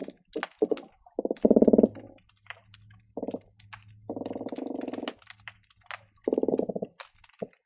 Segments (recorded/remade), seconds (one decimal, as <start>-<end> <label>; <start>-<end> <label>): 0.0-7.7 recorded